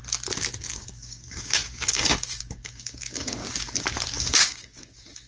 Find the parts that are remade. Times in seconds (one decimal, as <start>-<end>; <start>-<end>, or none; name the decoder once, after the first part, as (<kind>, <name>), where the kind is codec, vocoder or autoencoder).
0.7-3.4 (codec, DAC); 4.2-5.3